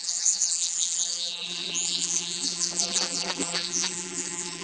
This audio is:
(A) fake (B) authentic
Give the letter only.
A